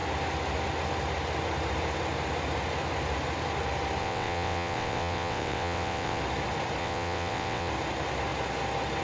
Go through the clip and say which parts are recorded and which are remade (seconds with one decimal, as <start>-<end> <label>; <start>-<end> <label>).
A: 0.0-4.0 recorded; 4.0-6.2 remade; 6.2-6.8 recorded; 6.8-7.7 remade; 7.7-9.0 recorded